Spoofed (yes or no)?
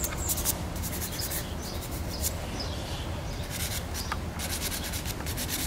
no